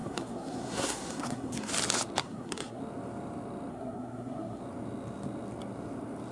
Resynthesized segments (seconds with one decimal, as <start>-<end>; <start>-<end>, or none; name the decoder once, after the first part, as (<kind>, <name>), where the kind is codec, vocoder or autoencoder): 0.0-1.7 (codec, SNAC); 2.2-2.8; 3.7-4.6